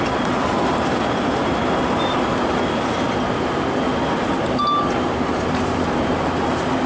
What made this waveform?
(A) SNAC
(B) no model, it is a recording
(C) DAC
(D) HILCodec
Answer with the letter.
B